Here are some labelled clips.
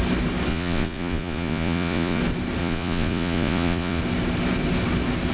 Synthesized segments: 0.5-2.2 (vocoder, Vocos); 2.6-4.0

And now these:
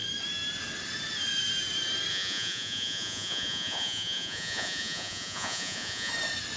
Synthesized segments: 2.1-6.1 (vocoder, Vocos)

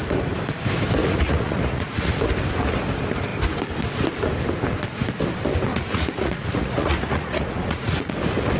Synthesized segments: 1.0-2.2 (vocoder, Vocos); 5.7-8.1

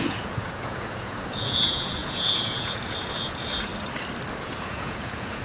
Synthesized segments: 0.0-3.7 (vocoder, Vocos); 4.4-5.4

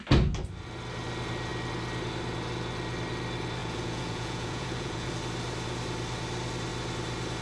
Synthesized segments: 3.6-5.1 (vocoder, Vocos)

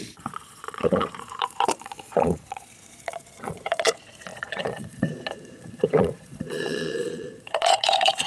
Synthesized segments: 0.0-8.3 (vocoder, Vocos)

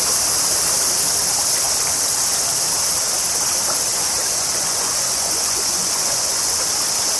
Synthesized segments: 3.9-6.6 (vocoder, Vocos)